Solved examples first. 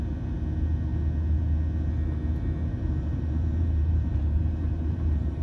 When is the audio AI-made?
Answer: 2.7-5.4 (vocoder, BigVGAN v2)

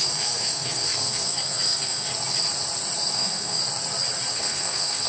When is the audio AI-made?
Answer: 0.0-2.1 (codec, SNAC); 3.1-3.6; 4.3-5.1